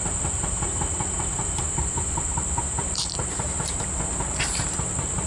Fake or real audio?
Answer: fake